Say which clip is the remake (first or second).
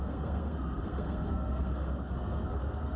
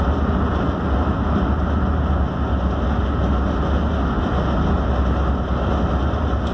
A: first